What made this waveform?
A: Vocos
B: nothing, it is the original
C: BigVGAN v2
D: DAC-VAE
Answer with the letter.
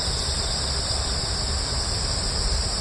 B